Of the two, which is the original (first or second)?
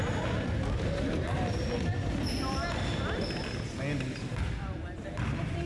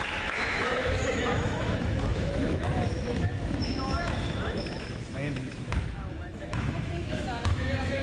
first